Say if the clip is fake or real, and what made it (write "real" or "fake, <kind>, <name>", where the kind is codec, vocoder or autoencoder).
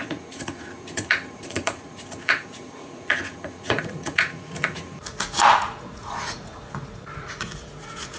fake, vocoder, Vocos